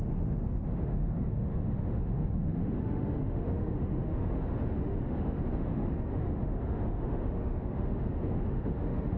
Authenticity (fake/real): fake